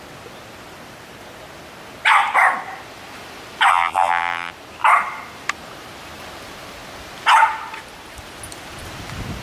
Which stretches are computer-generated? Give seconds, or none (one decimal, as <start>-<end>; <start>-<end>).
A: 3.7-4.5